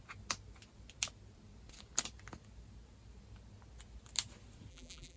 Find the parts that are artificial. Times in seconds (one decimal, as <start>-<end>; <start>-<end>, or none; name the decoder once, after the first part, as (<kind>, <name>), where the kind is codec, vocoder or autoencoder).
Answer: 4.7-5.2 (vocoder, BigVGAN v2)

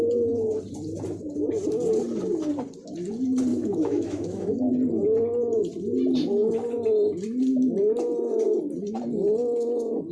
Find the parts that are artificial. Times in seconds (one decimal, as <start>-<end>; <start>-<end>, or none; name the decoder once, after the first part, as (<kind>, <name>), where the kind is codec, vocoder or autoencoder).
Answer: 3.5-4.7 (autoencoder, DAC-VAE)

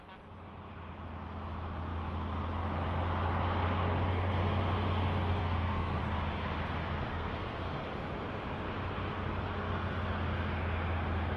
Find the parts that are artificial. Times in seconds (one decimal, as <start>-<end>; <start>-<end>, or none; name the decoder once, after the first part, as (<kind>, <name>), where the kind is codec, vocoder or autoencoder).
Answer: 5.4-6.0 (codec, SNAC); 7.1-7.8

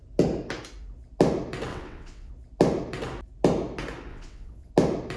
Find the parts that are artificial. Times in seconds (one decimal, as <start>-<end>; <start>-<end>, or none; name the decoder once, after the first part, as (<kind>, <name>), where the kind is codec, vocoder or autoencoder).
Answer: 1.7-2.3 (vocoder, WaveNeXt); 4.1-4.7